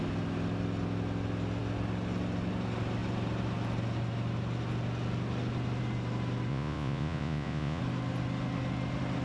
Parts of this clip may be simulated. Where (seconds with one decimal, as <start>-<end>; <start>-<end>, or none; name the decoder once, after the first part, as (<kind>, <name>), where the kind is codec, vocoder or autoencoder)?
6.5-7.8 (vocoder, Vocos)